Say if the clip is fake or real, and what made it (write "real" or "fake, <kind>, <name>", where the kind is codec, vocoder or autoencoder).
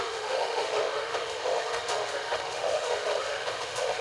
fake, autoencoder, DAC-VAE